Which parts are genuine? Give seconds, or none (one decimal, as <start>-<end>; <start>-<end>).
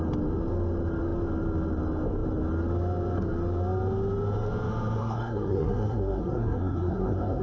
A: 0.0-5.0